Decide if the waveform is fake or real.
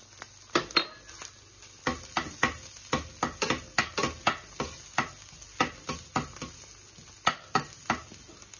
real